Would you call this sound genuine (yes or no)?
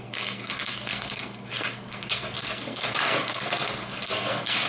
no